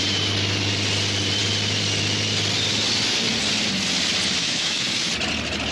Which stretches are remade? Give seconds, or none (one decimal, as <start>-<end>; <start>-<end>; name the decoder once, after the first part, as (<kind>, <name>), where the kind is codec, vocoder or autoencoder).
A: 4.4-5.1 (autoencoder, DAC-VAE)